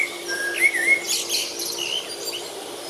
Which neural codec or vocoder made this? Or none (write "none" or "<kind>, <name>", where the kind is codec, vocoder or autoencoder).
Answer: none